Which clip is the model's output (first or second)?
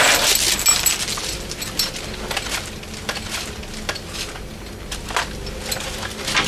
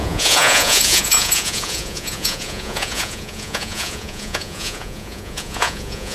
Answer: second